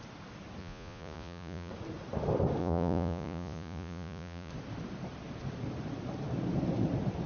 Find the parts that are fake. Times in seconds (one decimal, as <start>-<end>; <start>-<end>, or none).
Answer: 0.6-1.7; 2.6-4.5

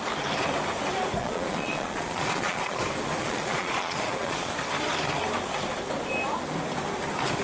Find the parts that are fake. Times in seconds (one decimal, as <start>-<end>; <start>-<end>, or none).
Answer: 1.2-2.8; 3.2-4.5